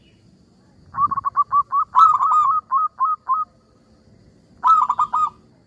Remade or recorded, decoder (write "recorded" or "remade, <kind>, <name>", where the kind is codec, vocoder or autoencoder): recorded